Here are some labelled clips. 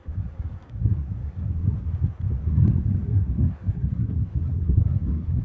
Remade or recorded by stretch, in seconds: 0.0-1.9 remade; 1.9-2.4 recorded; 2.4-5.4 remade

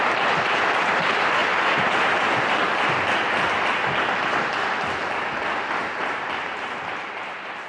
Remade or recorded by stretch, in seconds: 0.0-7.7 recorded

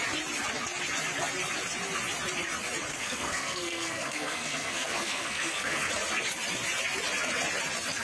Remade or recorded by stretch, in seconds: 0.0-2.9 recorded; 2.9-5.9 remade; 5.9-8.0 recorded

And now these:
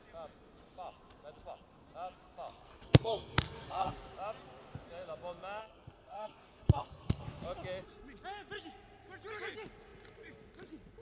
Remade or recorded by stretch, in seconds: 0.0-2.5 recorded; 2.5-3.9 remade; 3.9-5.6 recorded; 5.6-7.2 remade; 7.2-11.0 recorded

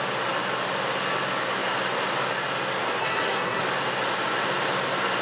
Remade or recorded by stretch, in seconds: 0.0-3.0 recorded; 3.0-3.6 remade; 3.6-5.2 recorded

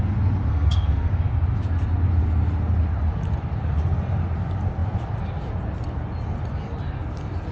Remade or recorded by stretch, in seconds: 0.0-0.5 recorded; 0.5-1.1 remade; 1.1-7.5 recorded

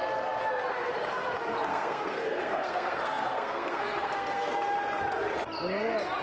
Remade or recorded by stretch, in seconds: 0.0-1.7 recorded; 1.7-4.5 remade; 4.5-6.2 recorded